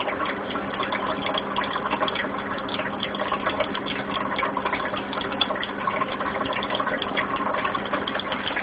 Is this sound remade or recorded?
recorded